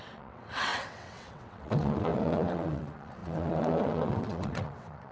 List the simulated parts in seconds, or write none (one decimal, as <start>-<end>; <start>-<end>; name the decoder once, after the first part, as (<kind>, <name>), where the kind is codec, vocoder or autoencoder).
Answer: 0.0-5.1 (vocoder, WaveNeXt)